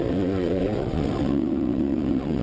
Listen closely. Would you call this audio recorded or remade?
remade